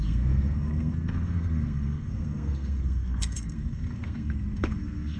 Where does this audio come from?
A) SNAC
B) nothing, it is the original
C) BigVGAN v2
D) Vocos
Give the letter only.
A